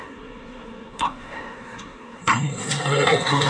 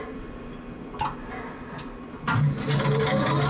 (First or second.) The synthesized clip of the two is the first